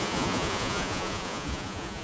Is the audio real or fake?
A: fake